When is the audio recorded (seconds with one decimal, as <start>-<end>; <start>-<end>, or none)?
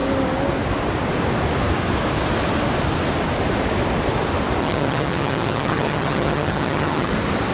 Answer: 0.0-4.6; 7.1-7.5